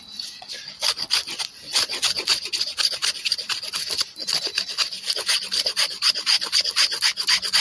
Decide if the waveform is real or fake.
real